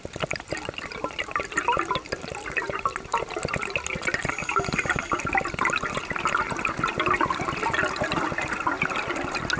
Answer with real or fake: real